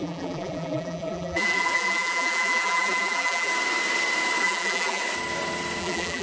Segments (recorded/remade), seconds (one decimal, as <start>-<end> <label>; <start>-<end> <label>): 0.0-3.5 remade; 3.5-4.4 recorded; 4.4-5.0 remade; 5.0-5.8 recorded; 5.8-6.2 remade